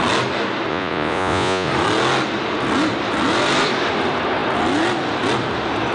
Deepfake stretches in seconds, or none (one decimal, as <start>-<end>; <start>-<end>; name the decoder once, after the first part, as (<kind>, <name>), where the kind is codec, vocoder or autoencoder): 0.7-1.7 (vocoder, Vocos)